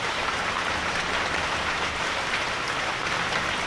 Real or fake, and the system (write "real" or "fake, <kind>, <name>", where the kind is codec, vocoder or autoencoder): fake, vocoder, BigVGAN v2